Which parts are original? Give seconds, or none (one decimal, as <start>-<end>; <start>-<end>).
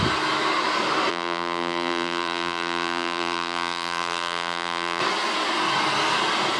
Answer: 0.0-1.1; 5.0-6.6